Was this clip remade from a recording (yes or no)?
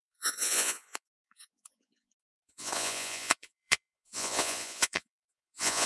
yes